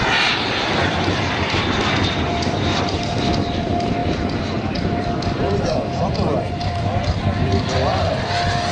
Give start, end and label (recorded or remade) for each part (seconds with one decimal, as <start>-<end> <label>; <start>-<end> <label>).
0.0-2.3 recorded; 2.3-3.3 remade; 3.3-4.0 recorded; 4.0-6.8 remade; 6.8-8.7 recorded